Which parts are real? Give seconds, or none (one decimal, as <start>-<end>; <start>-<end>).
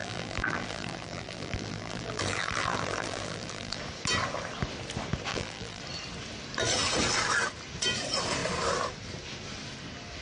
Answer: 3.8-5.3; 5.8-10.2